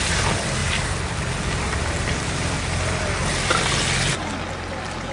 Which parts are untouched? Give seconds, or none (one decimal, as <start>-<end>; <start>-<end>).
0.0-0.6; 3.7-5.1